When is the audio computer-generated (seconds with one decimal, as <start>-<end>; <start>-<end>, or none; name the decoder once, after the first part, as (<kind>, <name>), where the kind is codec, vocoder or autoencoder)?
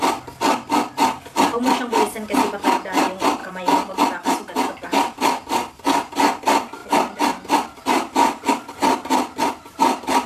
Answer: none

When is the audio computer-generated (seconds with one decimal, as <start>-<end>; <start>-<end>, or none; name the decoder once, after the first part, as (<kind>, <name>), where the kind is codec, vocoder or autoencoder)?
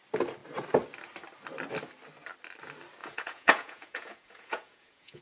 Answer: 3.0-5.2 (vocoder, Vocos)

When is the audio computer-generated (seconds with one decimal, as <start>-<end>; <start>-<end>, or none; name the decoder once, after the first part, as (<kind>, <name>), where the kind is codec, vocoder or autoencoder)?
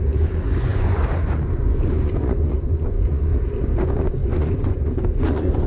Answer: 0.0-3.3 (vocoder, Vocos); 3.8-5.7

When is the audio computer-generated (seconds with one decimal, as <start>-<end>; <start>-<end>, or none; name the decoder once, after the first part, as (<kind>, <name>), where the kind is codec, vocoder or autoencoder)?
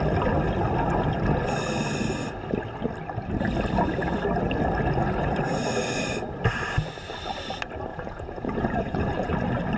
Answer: 7.9-9.3 (vocoder, Vocos)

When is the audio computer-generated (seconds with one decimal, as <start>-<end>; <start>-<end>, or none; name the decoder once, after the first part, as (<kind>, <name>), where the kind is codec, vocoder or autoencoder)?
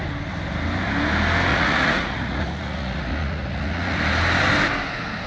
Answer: 1.5-4.0 (vocoder, Vocos)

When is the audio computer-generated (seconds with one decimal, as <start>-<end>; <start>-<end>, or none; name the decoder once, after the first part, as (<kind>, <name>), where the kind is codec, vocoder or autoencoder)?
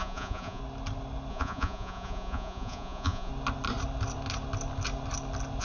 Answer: 0.0-0.6 (vocoder, Vocos); 1.3-3.3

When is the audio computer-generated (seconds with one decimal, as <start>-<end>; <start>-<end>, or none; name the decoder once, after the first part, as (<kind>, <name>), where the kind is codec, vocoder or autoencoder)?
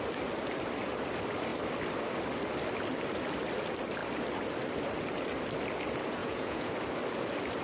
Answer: 6.2-6.7 (vocoder, Vocos)